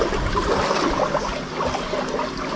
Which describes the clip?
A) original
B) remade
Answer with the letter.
A